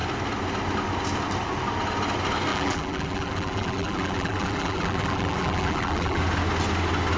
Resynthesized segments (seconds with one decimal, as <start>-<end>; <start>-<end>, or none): 2.5-6.2